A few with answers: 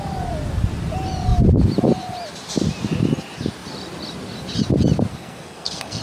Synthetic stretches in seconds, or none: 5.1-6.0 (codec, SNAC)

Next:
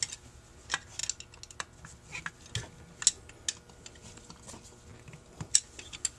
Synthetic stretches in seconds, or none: 4.9-5.5 (vocoder, BigVGAN v2)

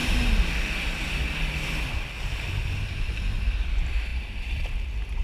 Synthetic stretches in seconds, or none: 4.1-4.8 (vocoder, BigVGAN v2)

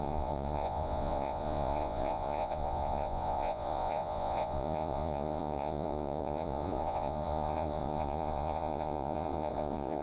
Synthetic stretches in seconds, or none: 0.0-10.0 (vocoder, Vocos)

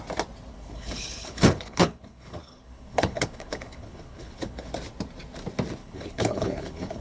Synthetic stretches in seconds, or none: 0.5-4.7 (codec, HILCodec); 5.8-7.0

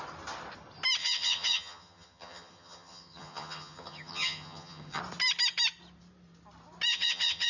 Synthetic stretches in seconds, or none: 1.0-5.0 (vocoder, HiFi-GAN); 6.9-7.5

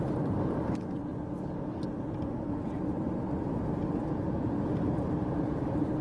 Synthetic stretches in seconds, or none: 0.0-1.1 (vocoder, BigVGAN v2); 4.4-6.0

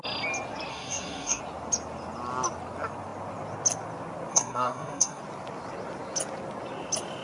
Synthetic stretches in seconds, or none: 0.7-1.4 (codec, SNAC); 4.3-5.2